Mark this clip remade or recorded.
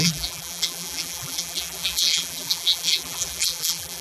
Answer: remade